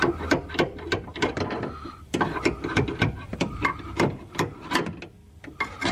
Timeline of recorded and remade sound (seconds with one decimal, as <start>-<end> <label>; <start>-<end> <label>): 0.0-1.1 recorded; 1.1-4.6 remade; 4.6-5.9 recorded